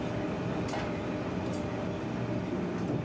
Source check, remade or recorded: recorded